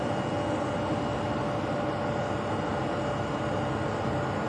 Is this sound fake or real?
real